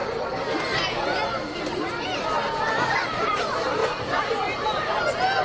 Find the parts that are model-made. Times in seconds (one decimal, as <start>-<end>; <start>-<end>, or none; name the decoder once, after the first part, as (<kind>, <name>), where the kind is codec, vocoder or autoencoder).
2.7-5.4 (vocoder, BigVGAN v2)